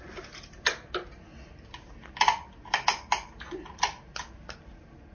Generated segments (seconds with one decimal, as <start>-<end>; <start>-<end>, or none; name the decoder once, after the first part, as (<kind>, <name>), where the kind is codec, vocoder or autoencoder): none